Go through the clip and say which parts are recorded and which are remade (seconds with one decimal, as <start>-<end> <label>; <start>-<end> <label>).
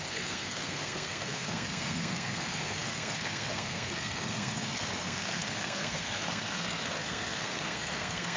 0.0-8.4 remade